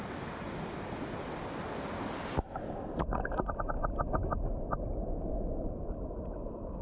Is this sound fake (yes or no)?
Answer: no